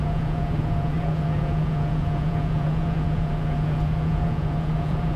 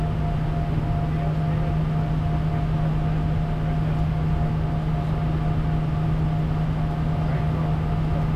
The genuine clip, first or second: second